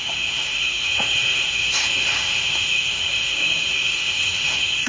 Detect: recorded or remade remade